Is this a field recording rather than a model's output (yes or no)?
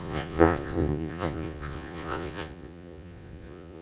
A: no